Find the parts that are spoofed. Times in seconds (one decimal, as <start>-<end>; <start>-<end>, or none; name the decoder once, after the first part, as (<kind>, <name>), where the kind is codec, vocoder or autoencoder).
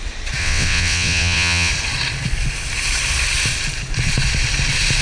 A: 0.4-1.7 (vocoder, WaveNeXt)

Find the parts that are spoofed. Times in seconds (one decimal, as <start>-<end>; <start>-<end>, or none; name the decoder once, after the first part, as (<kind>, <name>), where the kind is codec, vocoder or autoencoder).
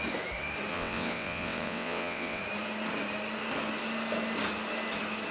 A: 0.7-2.4 (vocoder, WaveNeXt)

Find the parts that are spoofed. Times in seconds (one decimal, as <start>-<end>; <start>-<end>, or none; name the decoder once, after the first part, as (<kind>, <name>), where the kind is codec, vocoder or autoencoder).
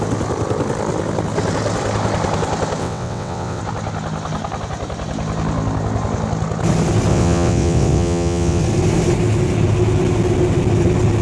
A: 2.8-3.6 (vocoder, WaveNeXt); 7.1-8.6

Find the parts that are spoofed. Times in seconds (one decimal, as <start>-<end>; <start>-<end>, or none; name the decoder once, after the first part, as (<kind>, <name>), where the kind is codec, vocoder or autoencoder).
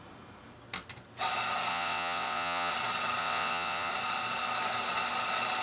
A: 1.7-2.7 (vocoder, WaveNeXt); 3.2-3.9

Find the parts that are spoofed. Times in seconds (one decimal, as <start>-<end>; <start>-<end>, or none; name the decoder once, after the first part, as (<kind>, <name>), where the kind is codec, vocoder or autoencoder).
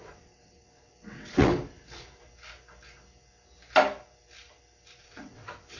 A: 0.0-1.5 (vocoder, WaveNeXt); 5.0-5.8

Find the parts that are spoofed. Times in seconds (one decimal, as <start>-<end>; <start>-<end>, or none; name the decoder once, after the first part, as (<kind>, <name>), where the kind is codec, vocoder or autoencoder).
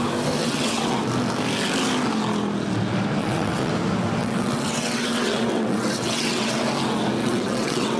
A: 0.4-1.0 (vocoder, WaveNeXt); 3.2-3.7; 4.2-6.6; 7.2-8.0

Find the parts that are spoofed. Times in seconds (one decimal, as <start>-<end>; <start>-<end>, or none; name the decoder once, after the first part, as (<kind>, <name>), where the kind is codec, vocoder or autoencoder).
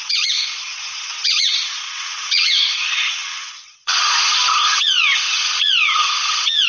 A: 0.0-6.7 (vocoder, WaveNeXt)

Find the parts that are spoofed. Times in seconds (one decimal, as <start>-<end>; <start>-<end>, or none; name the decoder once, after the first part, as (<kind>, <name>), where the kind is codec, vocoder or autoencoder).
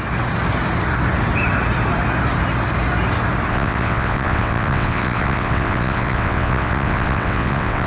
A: 3.5-7.9 (vocoder, WaveNeXt)